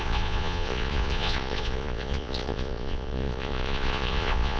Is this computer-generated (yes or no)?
yes